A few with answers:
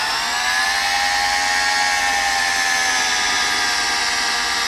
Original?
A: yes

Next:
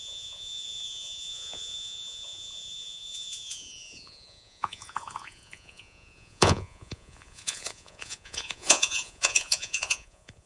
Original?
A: no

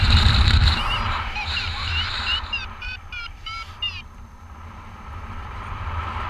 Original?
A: no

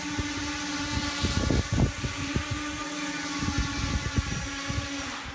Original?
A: yes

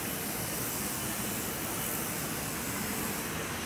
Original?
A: yes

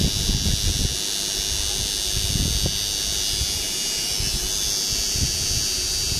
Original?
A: yes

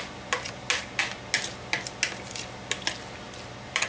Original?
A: yes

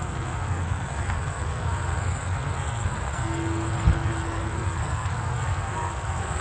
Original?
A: no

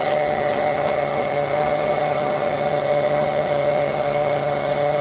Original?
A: no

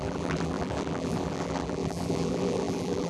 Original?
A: no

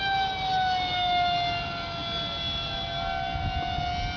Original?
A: yes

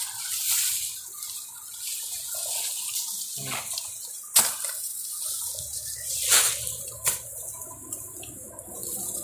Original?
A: yes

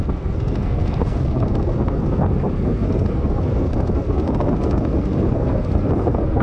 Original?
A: no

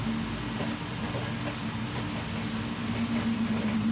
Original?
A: yes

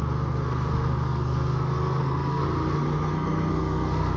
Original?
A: no